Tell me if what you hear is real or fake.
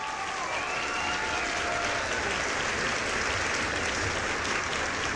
real